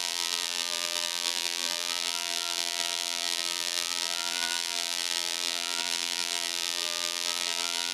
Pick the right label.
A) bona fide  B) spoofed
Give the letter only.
B